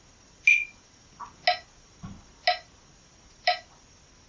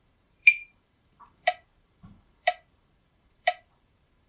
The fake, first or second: second